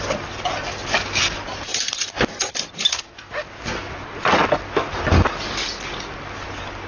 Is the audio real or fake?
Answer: real